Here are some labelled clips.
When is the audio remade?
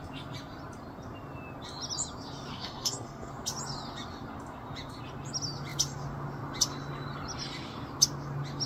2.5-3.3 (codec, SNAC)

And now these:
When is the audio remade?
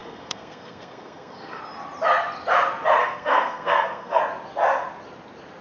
0.0-1.6 (codec, SNAC); 3.0-4.2